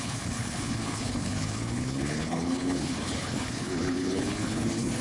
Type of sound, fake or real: fake